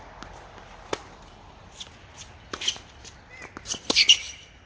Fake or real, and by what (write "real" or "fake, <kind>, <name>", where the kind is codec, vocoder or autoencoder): real